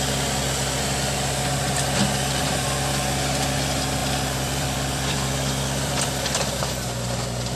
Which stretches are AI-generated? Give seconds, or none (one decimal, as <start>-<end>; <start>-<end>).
4.0-7.6